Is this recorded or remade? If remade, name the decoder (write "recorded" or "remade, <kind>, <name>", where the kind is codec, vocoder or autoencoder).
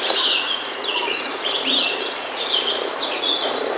remade, vocoder, Vocos